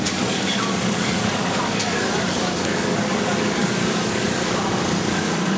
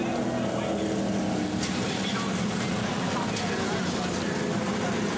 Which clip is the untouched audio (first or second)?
second